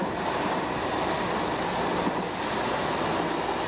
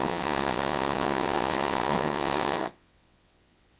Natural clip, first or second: first